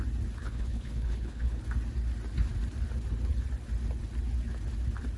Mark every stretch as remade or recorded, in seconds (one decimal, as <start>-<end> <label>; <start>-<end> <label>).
0.0-0.4 recorded; 0.4-1.6 remade; 1.6-5.2 recorded

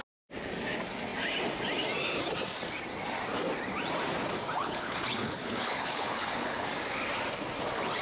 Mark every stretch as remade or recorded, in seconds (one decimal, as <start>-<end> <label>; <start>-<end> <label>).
0.0-4.6 recorded; 4.6-6.7 remade; 6.7-8.0 recorded